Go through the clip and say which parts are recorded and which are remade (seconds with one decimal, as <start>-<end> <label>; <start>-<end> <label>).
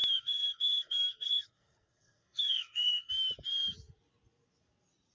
0.0-3.1 remade; 3.1-5.1 recorded